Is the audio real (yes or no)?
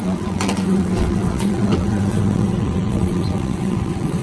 no